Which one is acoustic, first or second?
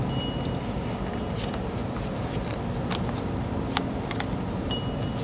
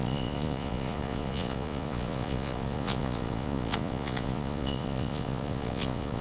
first